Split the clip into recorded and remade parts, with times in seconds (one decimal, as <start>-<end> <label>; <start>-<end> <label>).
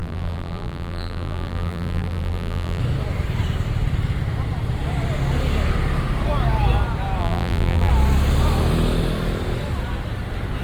0.0-2.8 remade; 2.8-7.2 recorded; 7.2-7.9 remade; 7.9-10.6 recorded